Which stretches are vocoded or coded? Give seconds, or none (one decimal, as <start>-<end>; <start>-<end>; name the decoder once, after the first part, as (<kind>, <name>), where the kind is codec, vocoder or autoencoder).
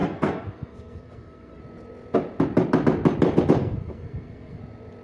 0.0-1.6 (codec, SNAC); 3.6-4.6